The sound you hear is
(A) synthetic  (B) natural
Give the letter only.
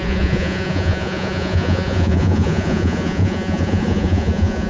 A